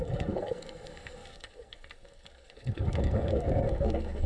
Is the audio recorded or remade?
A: remade